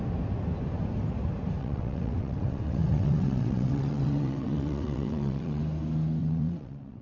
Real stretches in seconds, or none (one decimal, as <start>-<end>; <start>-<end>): 0.0-1.6; 5.6-6.2